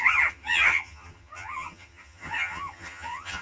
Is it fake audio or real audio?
fake